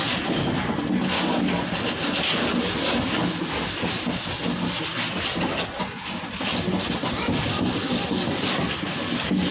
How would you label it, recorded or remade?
recorded